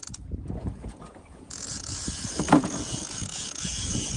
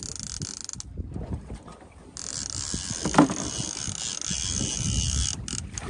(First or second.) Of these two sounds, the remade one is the first